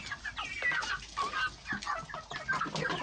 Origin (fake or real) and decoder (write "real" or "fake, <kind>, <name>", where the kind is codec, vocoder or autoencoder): real